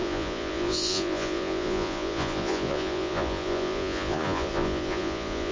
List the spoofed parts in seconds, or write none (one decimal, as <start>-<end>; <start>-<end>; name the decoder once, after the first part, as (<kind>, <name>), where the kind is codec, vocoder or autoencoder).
0.0-5.5 (vocoder, Vocos)